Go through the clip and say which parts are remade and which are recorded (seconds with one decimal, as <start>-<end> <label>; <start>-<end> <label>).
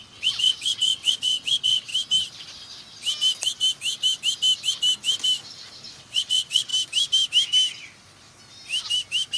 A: 0.0-1.9 remade; 1.9-6.0 recorded; 6.0-6.7 remade; 6.7-9.4 recorded